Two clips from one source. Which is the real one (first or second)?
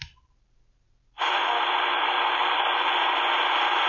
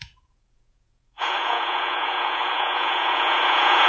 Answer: first